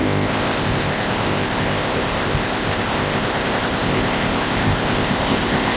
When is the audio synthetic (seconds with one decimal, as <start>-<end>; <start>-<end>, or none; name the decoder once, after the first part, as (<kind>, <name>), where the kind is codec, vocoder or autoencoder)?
0.0-5.8 (codec, ZipCodec)